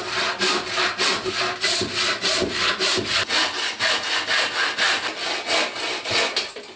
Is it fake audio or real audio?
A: real